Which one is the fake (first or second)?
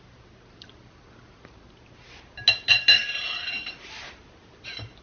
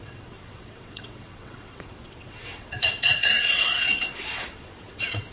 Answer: second